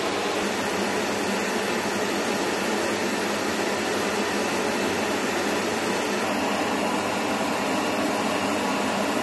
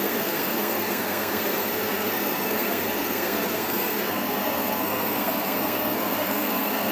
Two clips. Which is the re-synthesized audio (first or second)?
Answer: second